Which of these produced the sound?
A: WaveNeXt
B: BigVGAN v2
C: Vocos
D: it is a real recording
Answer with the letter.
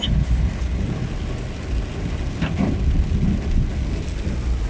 D